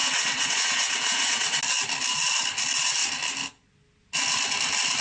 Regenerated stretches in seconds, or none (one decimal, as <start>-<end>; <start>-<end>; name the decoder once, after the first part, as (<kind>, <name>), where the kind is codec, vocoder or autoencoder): 0.0-1.6 (vocoder, WaveNeXt)